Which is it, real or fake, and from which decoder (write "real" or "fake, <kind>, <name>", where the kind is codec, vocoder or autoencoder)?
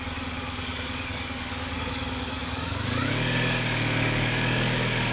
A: fake, codec, DAC